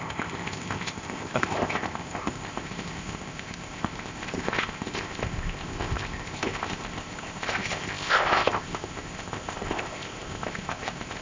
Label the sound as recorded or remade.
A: remade